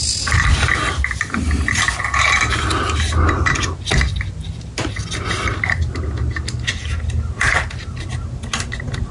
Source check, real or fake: real